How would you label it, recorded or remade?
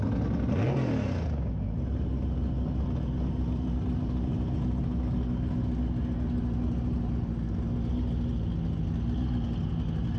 recorded